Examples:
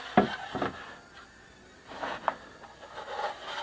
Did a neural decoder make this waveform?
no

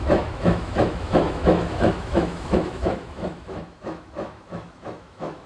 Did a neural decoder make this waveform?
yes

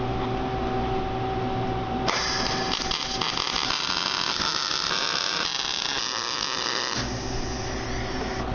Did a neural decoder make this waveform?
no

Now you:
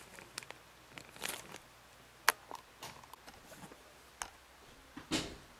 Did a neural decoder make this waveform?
no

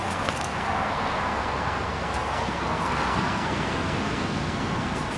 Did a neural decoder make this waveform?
yes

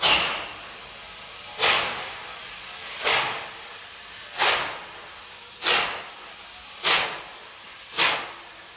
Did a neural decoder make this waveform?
no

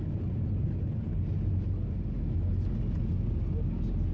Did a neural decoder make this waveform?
no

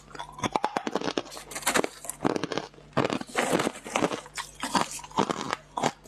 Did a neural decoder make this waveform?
no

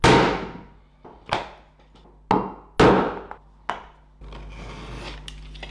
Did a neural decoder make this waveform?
no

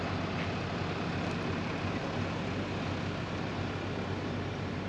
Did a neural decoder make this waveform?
no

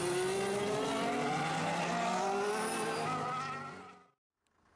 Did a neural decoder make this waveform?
no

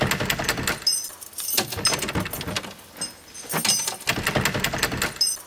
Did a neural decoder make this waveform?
no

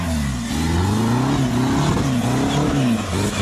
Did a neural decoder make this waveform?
no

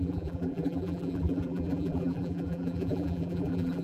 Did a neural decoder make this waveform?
yes